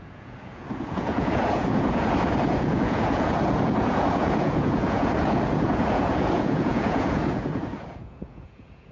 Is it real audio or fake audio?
fake